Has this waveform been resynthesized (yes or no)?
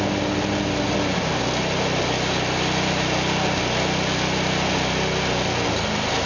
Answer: no